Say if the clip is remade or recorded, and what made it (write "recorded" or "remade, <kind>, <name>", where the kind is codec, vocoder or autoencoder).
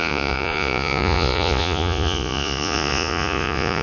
remade, vocoder, Vocos